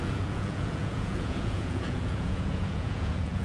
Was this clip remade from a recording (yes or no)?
yes